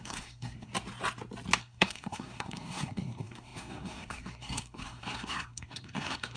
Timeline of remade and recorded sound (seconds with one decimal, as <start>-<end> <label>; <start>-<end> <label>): 0.0-0.7 remade; 0.7-1.6 recorded; 1.6-6.4 remade